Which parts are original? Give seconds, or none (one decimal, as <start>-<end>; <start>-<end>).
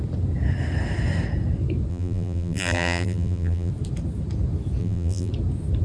0.0-1.9; 3.7-4.8; 5.3-5.8